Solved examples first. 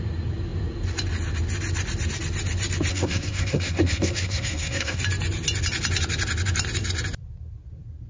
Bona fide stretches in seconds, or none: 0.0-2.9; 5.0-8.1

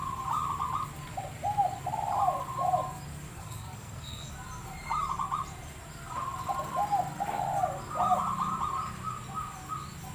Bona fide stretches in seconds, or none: 0.0-3.3; 4.3-10.1

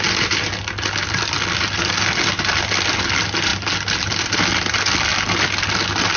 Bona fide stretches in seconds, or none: 0.0-6.2

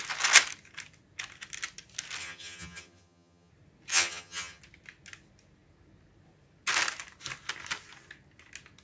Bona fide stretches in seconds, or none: 0.0-2.2; 3.5-3.9; 4.6-8.8

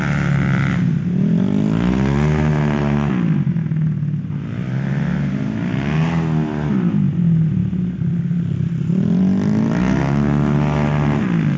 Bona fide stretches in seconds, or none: 0.0-11.6

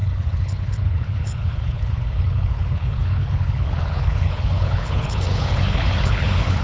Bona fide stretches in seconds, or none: none

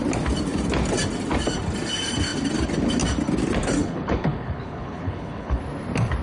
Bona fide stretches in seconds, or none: 0.0-3.8; 5.6-6.2